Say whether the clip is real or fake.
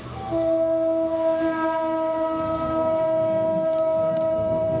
fake